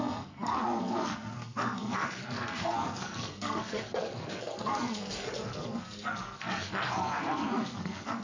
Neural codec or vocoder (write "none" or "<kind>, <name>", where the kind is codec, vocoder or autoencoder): codec, SNAC